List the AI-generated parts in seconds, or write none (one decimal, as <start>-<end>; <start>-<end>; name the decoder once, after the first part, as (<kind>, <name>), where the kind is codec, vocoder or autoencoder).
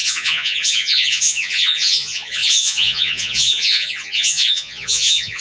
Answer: 0.0-5.4 (vocoder, Vocos)